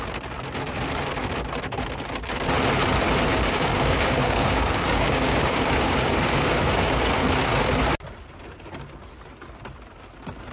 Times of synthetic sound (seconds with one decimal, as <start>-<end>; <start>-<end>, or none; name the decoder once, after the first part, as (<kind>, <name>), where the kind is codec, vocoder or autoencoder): 3.3-6.7 (codec, DAC)